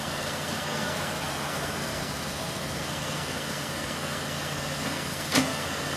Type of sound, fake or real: fake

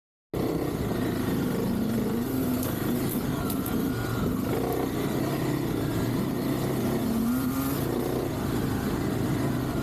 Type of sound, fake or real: real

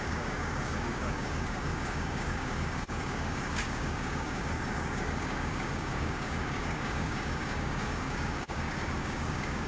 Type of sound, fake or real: fake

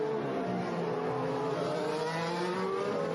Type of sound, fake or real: real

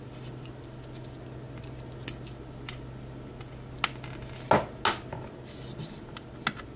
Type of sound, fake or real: real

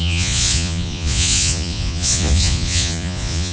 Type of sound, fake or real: fake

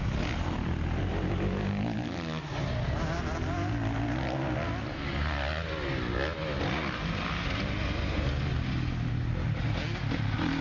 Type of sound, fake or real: real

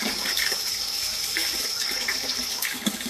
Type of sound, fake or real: fake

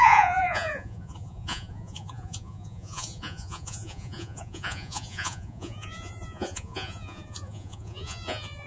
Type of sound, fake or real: fake